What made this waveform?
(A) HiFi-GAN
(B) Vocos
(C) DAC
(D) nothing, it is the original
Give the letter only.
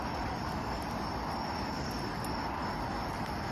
D